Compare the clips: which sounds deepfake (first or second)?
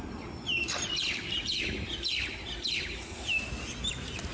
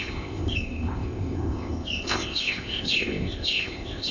second